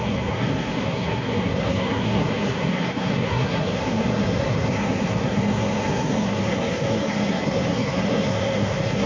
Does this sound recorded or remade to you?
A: remade